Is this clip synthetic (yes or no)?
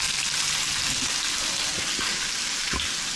no